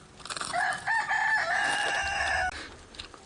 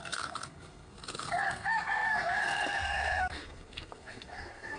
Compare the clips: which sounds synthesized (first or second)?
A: second